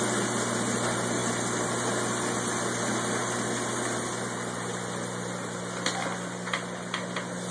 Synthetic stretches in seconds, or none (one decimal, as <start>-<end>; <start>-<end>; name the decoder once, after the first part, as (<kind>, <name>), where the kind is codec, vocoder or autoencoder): none